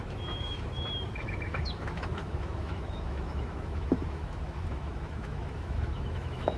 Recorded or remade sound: remade